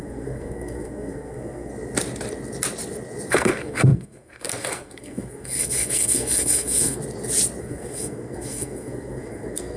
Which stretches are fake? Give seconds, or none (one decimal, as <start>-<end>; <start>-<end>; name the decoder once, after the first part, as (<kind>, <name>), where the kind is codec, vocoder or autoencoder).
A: 0.0-1.7 (codec, SNAC); 3.3-7.0; 7.6-9.8